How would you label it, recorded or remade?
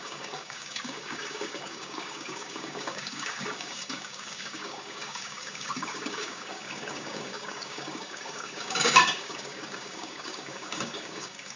remade